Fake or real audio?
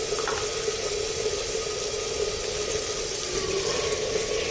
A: real